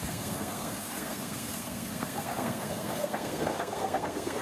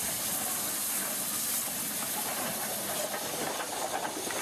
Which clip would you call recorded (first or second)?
second